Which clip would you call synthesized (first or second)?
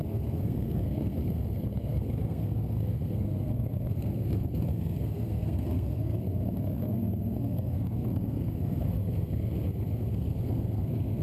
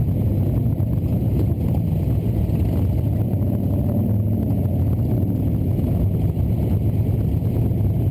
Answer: first